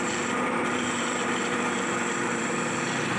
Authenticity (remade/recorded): remade